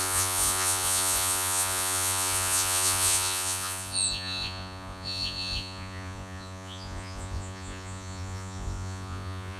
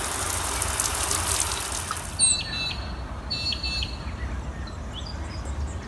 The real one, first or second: second